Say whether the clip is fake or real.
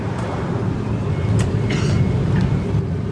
real